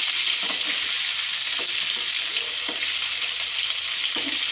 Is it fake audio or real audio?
real